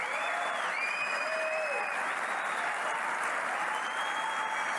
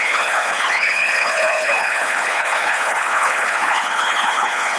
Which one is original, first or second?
first